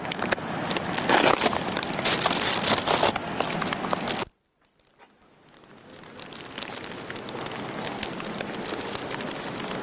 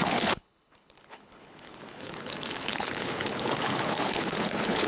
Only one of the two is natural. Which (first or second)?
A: first